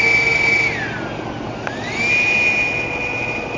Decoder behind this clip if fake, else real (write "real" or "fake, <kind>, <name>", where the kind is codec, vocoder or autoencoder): real